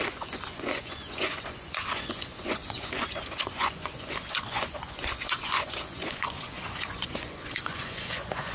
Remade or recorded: remade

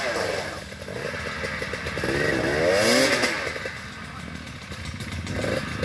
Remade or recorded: recorded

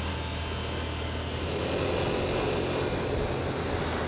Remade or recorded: recorded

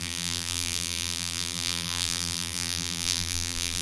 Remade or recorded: remade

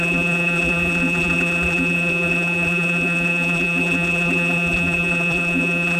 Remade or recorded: remade